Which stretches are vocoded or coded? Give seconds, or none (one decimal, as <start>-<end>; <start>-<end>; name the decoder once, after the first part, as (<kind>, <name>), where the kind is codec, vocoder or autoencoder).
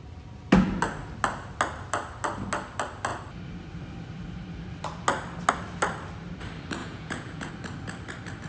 6.8-7.5 (vocoder, Vocos)